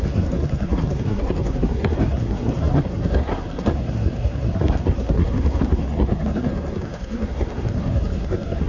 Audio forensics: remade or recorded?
remade